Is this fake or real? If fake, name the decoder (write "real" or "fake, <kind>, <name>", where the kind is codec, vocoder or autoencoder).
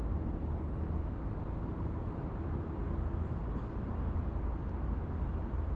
real